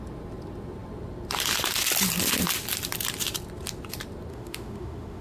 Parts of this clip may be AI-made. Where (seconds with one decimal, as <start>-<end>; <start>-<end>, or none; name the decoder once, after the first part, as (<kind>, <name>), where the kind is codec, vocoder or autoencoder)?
4.3-5.2 (autoencoder, DAC-VAE)